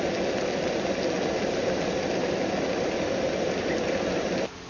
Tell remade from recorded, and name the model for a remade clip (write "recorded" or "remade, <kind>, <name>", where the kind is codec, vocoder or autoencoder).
recorded